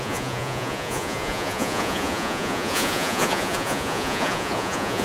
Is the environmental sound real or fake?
fake